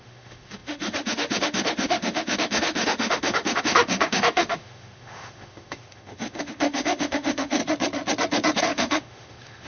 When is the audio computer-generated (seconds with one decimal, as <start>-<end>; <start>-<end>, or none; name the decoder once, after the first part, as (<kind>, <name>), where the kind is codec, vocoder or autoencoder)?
0.0-7.6 (autoencoder, DAC-VAE); 8.6-9.7